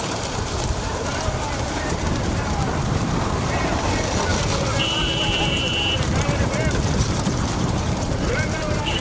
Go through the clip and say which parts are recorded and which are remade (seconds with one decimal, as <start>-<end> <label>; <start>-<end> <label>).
0.0-9.0 remade